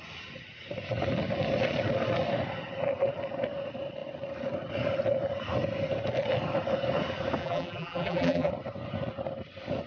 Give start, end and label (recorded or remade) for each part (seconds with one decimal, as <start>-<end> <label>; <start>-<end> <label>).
0.0-7.4 recorded; 7.4-8.5 remade; 8.5-9.9 recorded